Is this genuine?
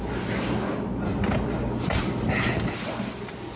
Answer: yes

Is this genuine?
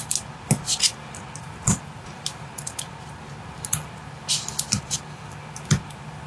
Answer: yes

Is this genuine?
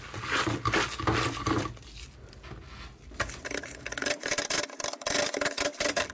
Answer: yes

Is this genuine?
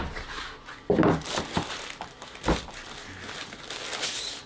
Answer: yes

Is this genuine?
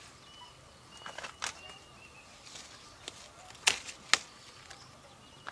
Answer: yes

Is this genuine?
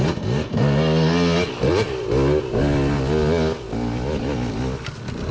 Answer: yes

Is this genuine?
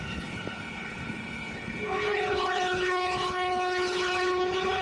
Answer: no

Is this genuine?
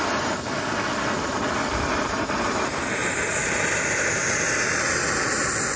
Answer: yes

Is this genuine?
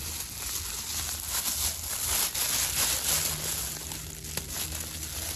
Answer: yes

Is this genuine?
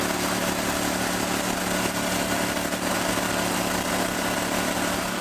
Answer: yes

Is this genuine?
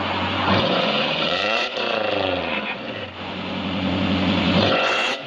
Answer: no